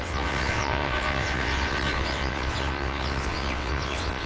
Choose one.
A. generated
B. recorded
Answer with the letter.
A